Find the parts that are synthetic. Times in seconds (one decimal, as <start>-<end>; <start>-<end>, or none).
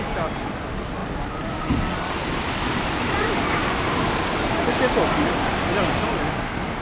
none